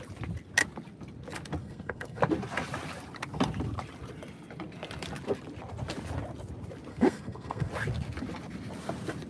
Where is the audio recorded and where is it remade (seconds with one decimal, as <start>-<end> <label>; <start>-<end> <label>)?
0.0-1.6 recorded; 1.6-2.2 remade; 2.2-6.9 recorded; 6.9-7.7 remade; 7.7-9.3 recorded